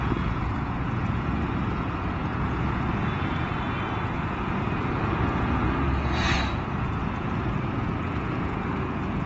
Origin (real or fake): fake